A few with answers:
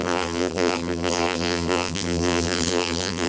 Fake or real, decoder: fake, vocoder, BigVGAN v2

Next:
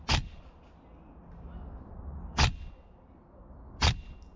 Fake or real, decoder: real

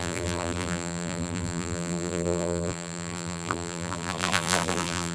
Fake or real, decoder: fake, vocoder, BigVGAN v2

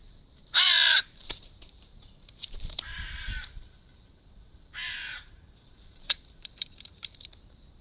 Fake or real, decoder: fake, vocoder, BigVGAN v2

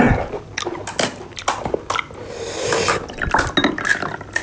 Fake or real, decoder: real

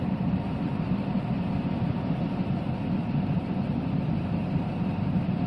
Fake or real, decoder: fake, vocoder, BigVGAN v2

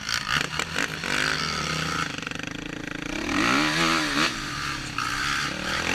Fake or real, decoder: real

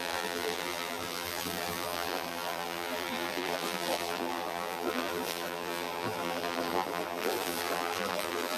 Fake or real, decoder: fake, vocoder, BigVGAN v2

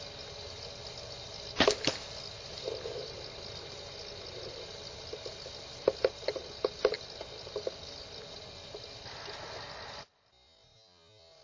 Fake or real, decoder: real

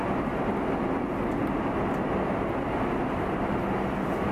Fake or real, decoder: real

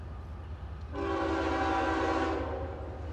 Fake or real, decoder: real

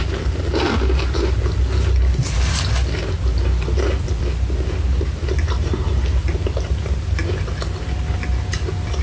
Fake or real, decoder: real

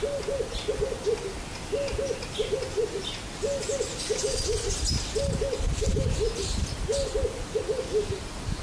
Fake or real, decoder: real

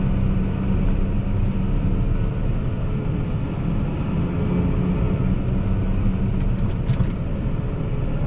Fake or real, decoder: real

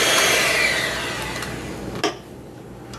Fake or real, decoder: real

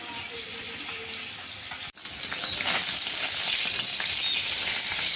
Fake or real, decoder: real